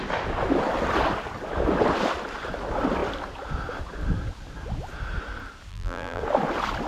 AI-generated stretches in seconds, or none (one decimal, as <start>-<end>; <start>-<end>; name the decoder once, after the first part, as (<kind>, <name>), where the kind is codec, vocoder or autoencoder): 5.7-6.2 (vocoder, BigVGAN v2)